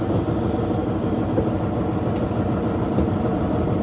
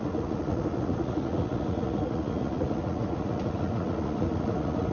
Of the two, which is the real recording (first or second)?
first